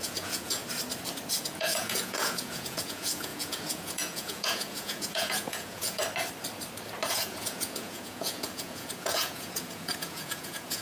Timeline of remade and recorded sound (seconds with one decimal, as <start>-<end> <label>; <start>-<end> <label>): 0.0-0.6 remade; 0.6-1.4 recorded; 1.4-6.0 remade; 6.0-7.1 recorded; 7.1-10.8 remade